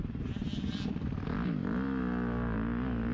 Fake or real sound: real